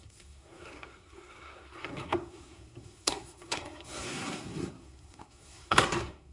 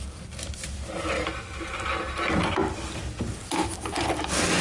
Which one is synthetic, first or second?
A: first